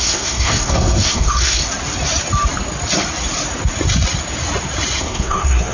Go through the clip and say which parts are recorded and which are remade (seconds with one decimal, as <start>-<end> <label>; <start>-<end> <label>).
0.0-1.6 remade; 1.6-5.0 recorded; 5.0-5.7 remade